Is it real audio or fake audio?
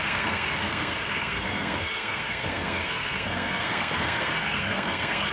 fake